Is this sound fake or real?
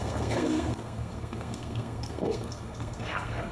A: fake